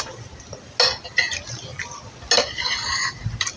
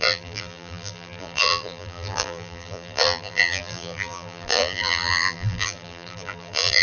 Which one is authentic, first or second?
first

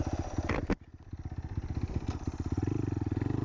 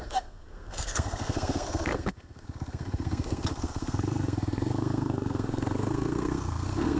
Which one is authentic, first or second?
first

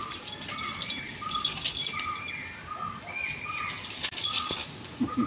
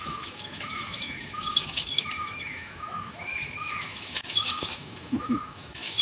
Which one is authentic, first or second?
first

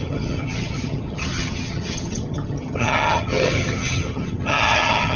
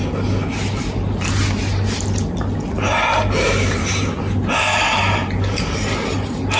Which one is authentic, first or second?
second